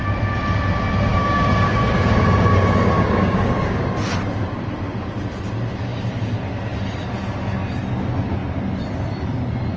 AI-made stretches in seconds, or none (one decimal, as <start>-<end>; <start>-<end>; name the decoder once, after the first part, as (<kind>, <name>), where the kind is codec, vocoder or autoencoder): 1.1-3.8 (codec, DAC)